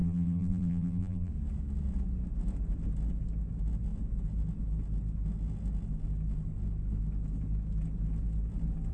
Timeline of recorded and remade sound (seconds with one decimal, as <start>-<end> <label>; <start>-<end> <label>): 0.0-1.3 remade; 1.3-8.9 recorded